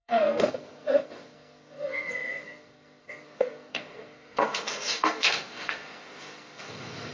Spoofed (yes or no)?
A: yes